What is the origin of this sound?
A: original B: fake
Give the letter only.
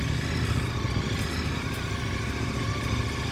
A